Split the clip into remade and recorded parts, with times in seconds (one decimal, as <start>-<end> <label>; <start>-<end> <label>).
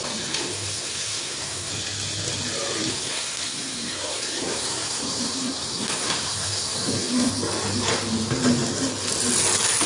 0.0-0.4 recorded; 0.4-1.7 remade; 1.7-2.9 recorded; 2.9-7.3 remade; 7.3-9.9 recorded